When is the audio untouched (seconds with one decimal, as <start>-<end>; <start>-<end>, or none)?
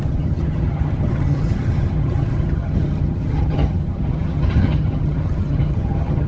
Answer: none